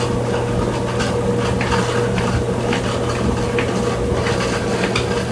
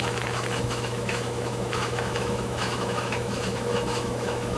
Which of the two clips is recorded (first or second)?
first